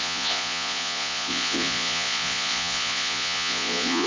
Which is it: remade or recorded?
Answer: remade